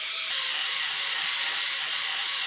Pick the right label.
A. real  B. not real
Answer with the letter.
A